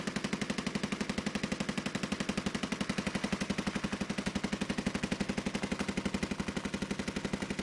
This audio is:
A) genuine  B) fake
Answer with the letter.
A